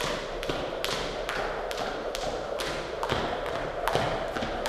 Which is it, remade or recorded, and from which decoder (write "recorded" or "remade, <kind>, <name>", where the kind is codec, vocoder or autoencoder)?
recorded